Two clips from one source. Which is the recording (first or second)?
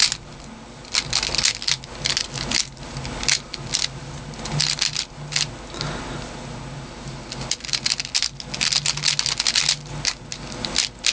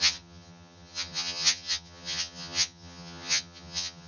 first